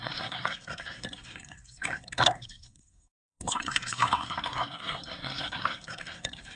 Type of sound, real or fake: fake